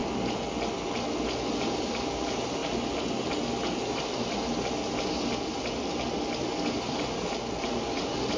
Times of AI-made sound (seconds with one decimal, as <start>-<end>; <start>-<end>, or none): 1.6-2.6; 7.6-8.4